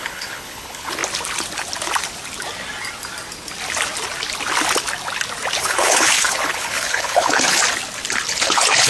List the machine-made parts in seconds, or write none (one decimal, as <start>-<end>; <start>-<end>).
0.0-1.0; 5.6-7.6; 8.3-8.9